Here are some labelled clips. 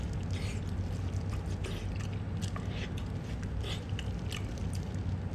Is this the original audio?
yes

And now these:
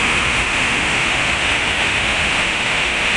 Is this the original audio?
no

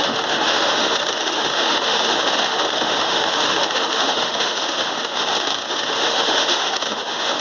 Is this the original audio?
no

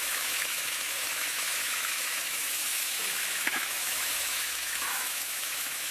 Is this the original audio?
no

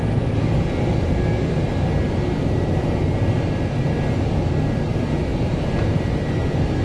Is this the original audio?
yes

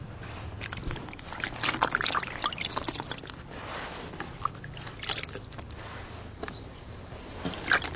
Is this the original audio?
yes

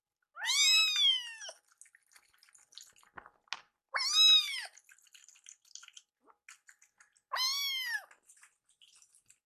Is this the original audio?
yes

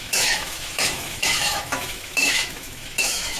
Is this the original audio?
no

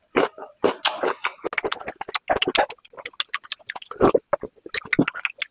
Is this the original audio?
yes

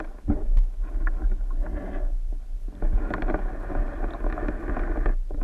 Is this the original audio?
yes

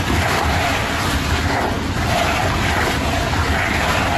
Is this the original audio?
yes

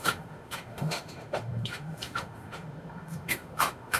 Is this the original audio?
no